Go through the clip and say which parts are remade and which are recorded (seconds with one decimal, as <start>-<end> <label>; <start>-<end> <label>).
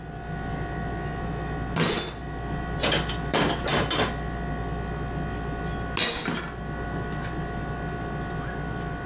0.0-9.1 recorded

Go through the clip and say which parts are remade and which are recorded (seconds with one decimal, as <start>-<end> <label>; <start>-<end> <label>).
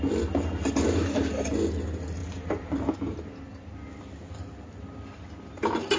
0.0-6.0 recorded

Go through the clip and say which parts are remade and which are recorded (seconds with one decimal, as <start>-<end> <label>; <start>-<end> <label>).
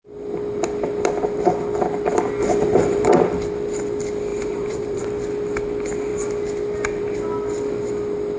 0.0-2.4 recorded; 2.4-3.1 remade; 3.1-4.3 recorded; 4.3-5.0 remade; 5.0-8.4 recorded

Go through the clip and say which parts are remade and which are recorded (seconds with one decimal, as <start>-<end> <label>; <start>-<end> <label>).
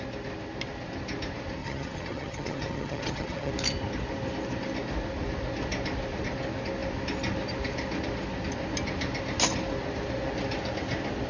0.0-1.6 recorded; 1.6-3.5 remade; 3.5-11.3 recorded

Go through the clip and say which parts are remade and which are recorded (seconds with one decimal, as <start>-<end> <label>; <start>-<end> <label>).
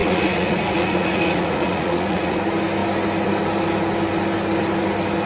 0.0-2.4 remade; 2.4-5.3 recorded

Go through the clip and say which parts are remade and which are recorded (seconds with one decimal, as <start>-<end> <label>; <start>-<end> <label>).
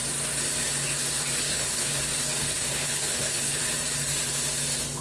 0.0-1.4 recorded; 1.4-2.0 remade; 2.0-2.4 recorded; 2.4-3.6 remade; 3.6-5.0 recorded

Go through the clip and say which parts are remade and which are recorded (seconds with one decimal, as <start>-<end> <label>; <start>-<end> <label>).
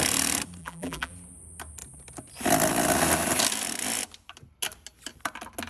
0.0-0.6 recorded; 0.6-1.1 remade; 1.1-5.7 recorded